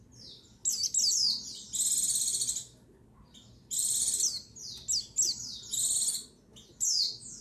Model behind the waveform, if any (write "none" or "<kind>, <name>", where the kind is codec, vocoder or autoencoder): none